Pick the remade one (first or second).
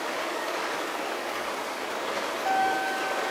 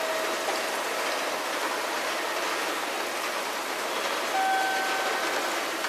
first